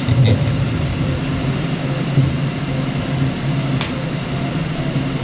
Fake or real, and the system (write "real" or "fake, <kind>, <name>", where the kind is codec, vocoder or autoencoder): real